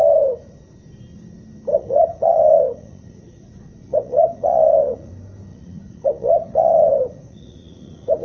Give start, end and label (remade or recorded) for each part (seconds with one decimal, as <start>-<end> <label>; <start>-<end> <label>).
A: 0.0-1.7 recorded; 1.7-5.1 remade; 5.1-5.5 recorded; 5.5-8.2 remade